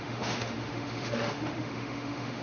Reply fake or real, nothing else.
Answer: fake